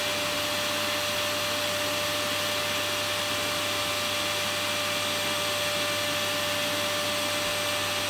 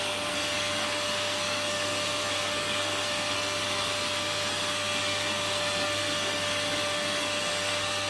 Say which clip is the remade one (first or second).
second